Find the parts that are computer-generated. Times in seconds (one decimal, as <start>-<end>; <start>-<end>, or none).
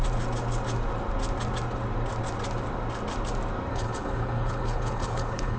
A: 3.7-5.6